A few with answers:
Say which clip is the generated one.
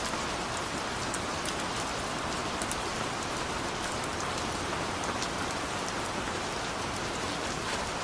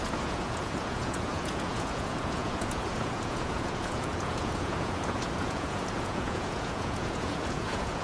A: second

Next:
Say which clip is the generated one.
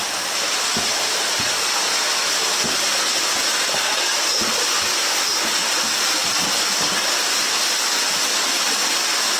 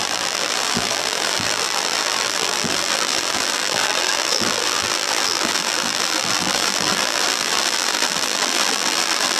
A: second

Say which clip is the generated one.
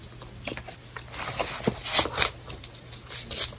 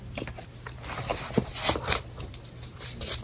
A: second